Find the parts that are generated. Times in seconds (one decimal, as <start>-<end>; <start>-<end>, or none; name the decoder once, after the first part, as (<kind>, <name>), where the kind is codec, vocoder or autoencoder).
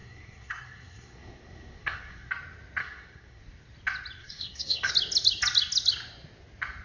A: 0.0-2.3 (codec, SNAC); 2.8-3.4; 4.2-4.9